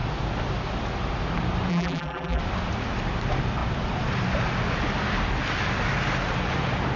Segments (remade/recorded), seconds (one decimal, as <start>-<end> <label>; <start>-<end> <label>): 0.0-1.7 recorded; 1.7-2.4 remade; 2.4-7.0 recorded